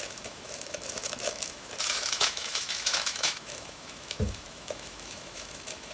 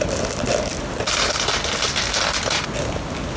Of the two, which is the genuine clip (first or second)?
second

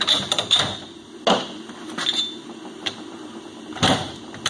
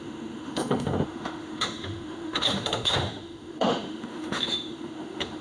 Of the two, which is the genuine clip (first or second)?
first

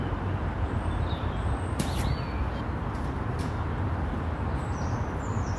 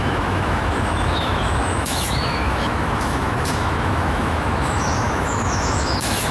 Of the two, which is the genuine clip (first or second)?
first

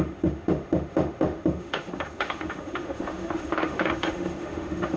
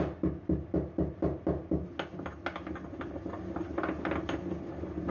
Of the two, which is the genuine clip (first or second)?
second